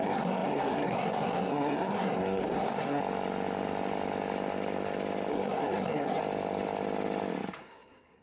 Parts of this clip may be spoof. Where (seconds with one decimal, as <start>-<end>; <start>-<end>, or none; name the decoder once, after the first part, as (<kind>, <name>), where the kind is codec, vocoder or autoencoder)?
0.0-3.0 (codec, SNAC); 5.3-6.2; 7.6-8.2